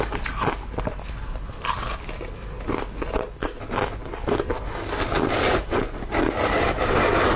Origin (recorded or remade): recorded